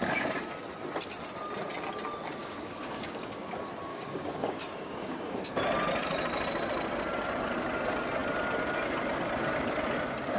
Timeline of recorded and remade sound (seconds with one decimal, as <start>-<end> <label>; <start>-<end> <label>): 0.0-2.4 recorded; 2.4-3.5 remade; 3.5-3.9 recorded; 3.9-5.6 remade; 5.6-10.4 recorded